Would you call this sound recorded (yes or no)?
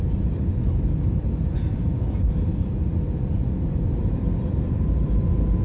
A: yes